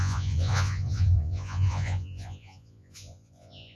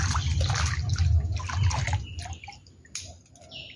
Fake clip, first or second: first